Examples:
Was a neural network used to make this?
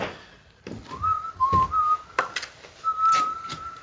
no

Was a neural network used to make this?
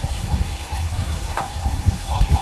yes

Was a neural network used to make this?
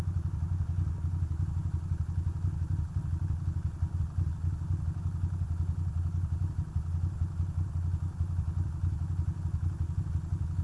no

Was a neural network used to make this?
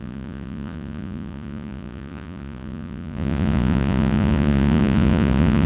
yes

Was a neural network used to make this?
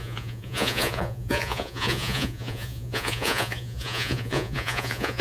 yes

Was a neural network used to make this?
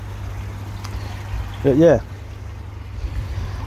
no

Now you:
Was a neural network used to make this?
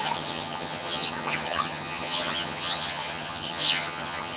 yes